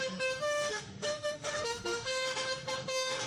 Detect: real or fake fake